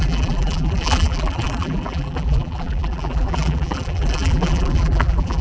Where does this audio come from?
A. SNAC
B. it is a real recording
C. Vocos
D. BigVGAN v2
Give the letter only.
D